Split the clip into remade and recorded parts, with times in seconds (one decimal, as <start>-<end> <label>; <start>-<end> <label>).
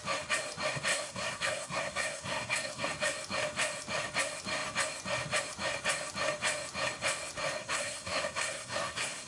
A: 0.0-0.9 recorded; 0.9-2.9 remade; 2.9-7.6 recorded; 7.6-9.3 remade